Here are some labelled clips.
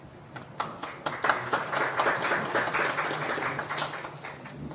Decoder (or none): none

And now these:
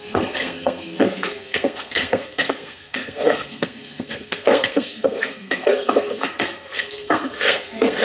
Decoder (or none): codec, SNAC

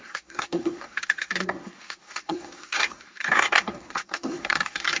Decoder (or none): codec, SNAC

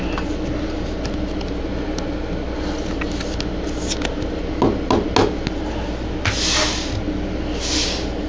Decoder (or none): none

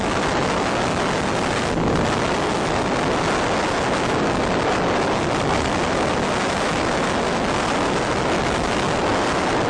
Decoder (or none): none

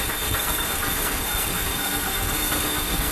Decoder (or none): codec, SNAC